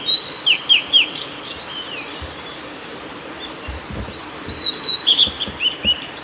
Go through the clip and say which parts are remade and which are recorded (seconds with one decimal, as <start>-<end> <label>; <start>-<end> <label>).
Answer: 0.0-6.2 remade